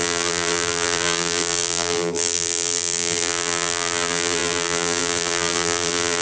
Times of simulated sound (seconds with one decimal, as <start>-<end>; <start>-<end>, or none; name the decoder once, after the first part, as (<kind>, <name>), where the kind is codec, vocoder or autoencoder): 0.0-6.2 (vocoder, BigVGAN v2)